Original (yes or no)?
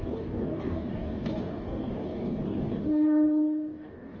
no